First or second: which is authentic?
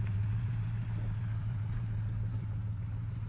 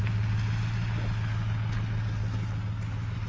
second